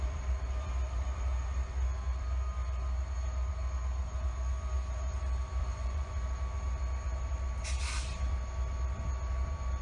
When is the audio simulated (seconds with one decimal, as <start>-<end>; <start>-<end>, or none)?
5.6-6.1